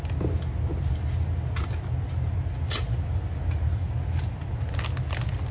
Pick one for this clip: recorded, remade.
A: recorded